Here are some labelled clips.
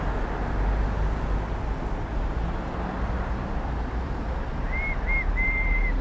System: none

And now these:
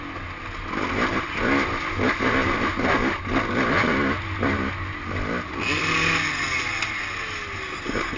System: none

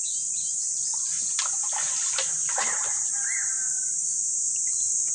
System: none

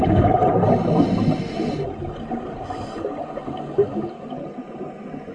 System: none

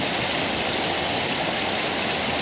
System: none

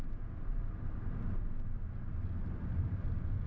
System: none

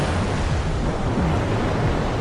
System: none